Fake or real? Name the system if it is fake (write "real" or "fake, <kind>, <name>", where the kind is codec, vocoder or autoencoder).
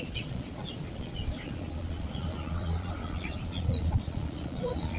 fake, vocoder, Vocos